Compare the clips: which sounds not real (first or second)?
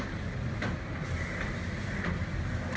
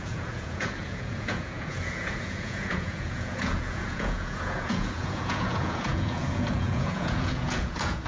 second